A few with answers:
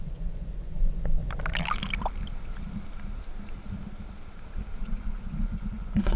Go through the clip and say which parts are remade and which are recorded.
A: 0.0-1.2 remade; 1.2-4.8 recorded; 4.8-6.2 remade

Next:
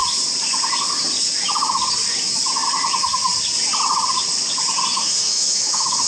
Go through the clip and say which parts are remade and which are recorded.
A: 0.0-4.9 recorded; 4.9-6.1 remade

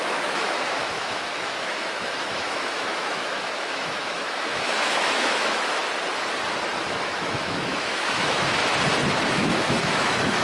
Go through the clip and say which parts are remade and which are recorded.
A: 0.0-5.8 remade; 5.8-6.8 recorded; 6.8-8.6 remade; 8.6-9.2 recorded; 9.2-10.4 remade

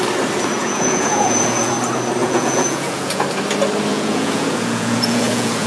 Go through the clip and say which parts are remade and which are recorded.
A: 0.0-0.6 recorded; 0.6-1.7 remade; 1.7-2.2 recorded; 2.2-3.2 remade; 3.2-3.9 recorded; 3.9-5.7 remade